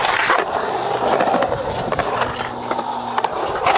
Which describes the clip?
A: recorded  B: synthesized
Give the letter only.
A